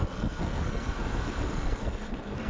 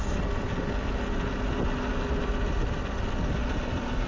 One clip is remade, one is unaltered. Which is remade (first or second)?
first